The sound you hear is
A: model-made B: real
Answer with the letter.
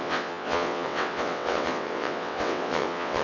A